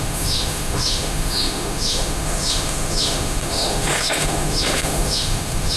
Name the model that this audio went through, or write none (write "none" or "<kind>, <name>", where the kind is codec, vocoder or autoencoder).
autoencoder, DAC-VAE